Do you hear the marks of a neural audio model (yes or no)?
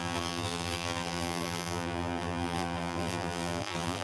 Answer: yes